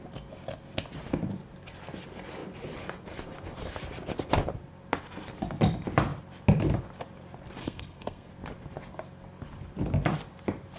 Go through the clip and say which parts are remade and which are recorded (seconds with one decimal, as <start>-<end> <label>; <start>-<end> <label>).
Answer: 0.0-7.6 recorded; 7.6-8.3 remade; 8.3-10.8 recorded

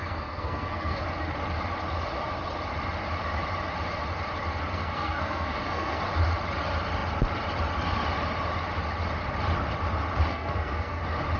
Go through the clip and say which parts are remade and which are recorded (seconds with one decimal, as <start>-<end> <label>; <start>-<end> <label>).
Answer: 0.0-1.0 remade; 1.0-4.7 recorded; 4.7-6.0 remade; 6.0-10.3 recorded; 10.3-11.0 remade; 11.0-11.4 recorded

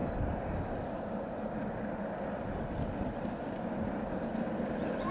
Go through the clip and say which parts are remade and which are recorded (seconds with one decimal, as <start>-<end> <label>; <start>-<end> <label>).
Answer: 0.0-5.1 recorded

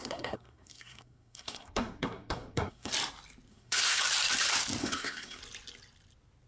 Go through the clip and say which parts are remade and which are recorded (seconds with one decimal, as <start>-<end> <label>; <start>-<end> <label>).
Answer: 0.0-2.9 remade; 2.9-3.5 recorded; 3.5-4.0 remade; 4.0-4.8 recorded; 4.8-5.4 remade; 5.4-6.5 recorded